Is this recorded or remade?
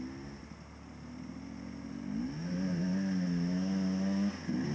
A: recorded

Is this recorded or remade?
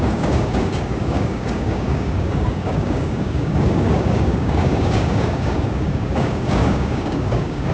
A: remade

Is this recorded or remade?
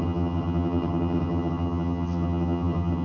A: remade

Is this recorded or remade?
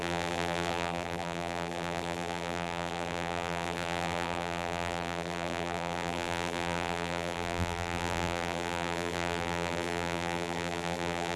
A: remade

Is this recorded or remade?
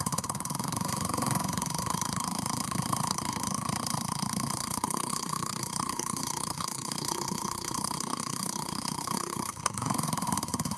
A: remade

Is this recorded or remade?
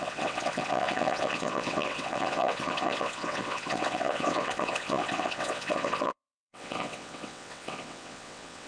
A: remade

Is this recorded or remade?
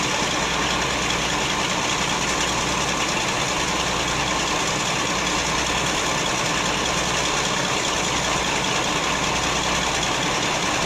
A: recorded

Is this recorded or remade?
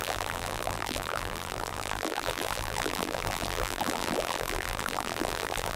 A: remade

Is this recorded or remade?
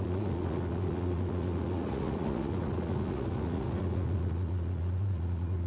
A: remade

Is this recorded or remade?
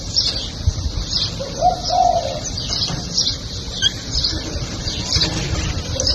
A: recorded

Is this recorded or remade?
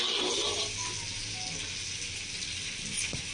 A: recorded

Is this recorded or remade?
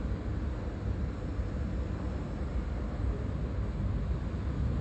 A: recorded